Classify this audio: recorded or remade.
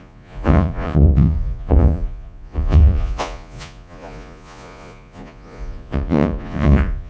remade